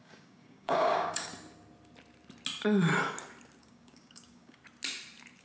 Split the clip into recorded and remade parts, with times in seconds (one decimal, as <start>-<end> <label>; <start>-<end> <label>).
0.0-1.3 remade; 1.3-3.6 recorded; 3.6-4.6 remade; 4.6-5.4 recorded